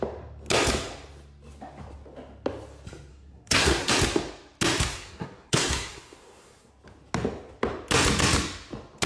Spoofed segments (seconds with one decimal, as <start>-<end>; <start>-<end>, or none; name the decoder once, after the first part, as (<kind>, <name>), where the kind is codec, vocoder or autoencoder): 3.1-3.9 (codec, SNAC); 4.9-6.7